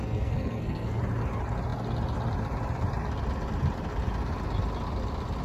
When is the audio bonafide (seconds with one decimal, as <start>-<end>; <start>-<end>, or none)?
1.0-5.4